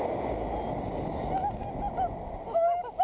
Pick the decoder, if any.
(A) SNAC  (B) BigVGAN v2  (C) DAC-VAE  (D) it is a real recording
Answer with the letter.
D